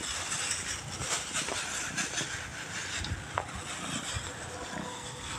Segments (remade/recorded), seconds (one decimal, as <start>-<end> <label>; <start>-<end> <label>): 0.0-4.8 recorded; 4.8-5.4 remade